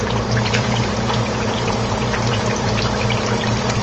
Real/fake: fake